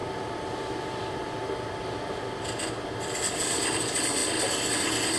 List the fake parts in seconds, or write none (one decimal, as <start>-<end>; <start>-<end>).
0.0-3.1